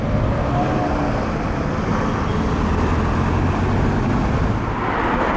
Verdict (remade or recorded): recorded